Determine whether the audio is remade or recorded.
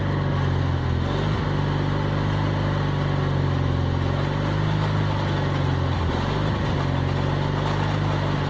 recorded